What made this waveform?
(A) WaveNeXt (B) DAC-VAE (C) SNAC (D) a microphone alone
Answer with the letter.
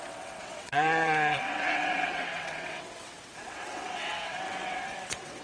A